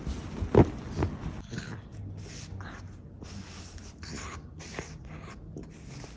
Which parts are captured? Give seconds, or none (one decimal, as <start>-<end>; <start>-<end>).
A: 0.0-6.2